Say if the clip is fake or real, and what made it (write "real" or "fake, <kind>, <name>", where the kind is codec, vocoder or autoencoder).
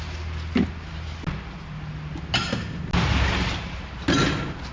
real